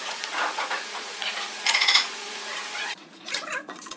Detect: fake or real fake